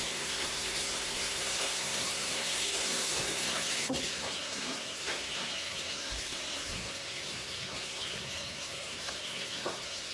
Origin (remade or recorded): remade